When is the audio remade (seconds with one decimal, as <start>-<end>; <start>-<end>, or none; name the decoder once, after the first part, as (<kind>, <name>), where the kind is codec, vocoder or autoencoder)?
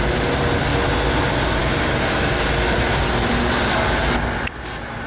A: none